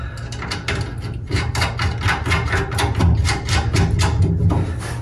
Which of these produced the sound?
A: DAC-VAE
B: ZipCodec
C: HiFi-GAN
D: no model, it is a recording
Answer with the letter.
D